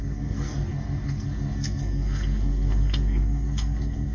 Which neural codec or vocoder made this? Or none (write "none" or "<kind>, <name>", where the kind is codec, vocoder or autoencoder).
codec, SNAC